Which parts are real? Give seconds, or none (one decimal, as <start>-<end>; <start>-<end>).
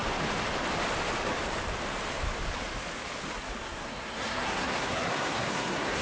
0.0-3.6